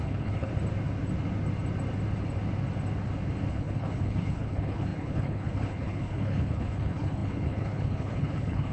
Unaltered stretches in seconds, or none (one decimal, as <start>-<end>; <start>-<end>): 0.5-3.5